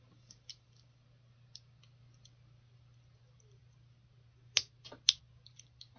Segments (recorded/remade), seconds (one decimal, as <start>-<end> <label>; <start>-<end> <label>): 0.0-6.0 recorded